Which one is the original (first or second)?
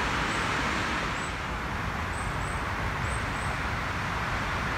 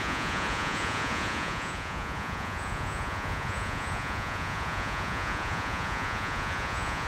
first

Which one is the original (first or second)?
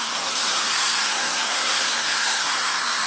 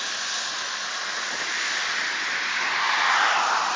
second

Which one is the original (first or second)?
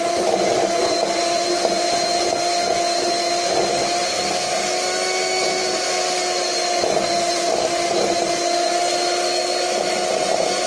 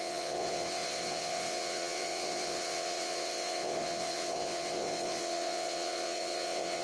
first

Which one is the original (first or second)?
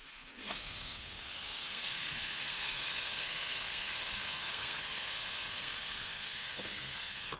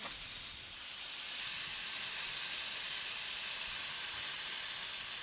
second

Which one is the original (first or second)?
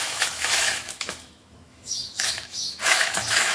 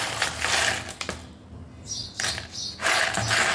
second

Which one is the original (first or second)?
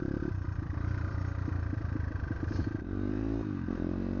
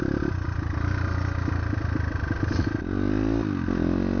second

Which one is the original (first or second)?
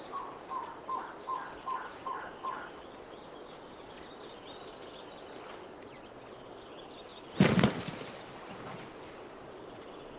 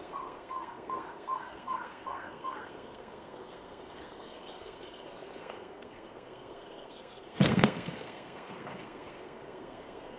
first